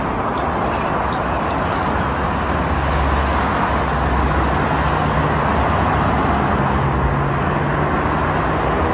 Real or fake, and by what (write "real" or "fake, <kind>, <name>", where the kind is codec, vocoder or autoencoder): real